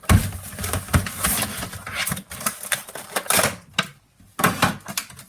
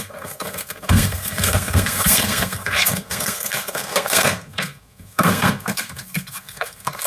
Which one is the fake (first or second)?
second